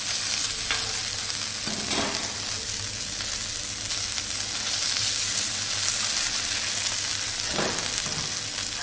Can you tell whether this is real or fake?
real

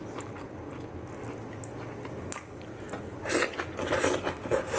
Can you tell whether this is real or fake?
real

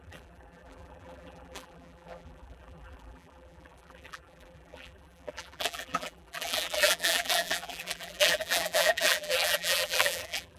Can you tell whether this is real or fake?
fake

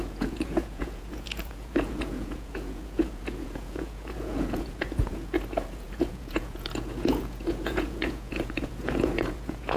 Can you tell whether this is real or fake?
fake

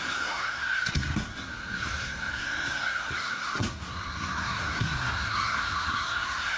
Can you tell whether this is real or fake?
fake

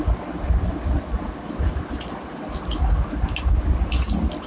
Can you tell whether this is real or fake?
real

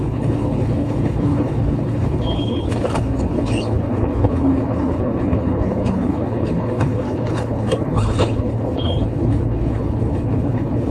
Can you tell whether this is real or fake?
fake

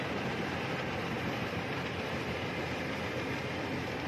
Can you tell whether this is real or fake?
real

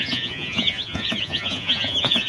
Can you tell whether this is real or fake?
fake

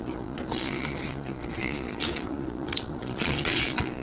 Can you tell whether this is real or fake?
fake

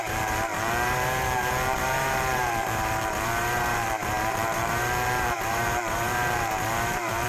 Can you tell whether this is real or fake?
fake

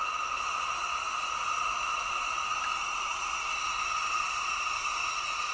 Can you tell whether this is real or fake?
real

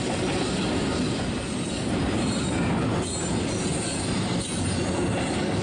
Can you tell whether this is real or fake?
real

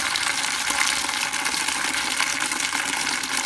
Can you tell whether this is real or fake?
real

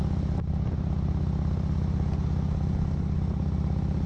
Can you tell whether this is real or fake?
real